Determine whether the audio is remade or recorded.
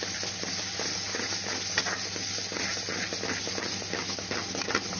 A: recorded